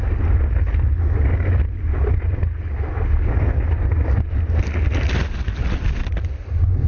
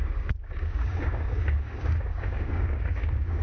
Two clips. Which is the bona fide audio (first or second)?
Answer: first